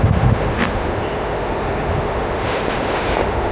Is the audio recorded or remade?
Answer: remade